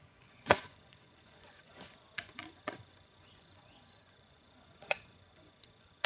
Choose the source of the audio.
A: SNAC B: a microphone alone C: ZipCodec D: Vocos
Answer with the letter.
D